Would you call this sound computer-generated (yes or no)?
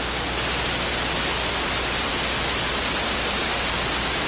no